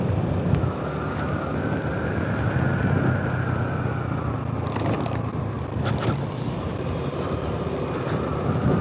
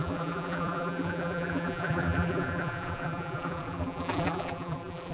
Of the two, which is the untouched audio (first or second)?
first